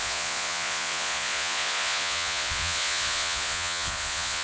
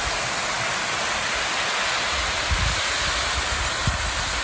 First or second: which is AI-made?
first